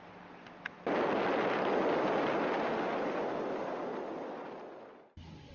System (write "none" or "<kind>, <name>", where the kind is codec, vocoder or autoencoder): none